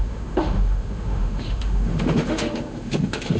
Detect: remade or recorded remade